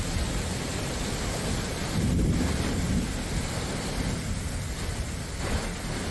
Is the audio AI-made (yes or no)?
no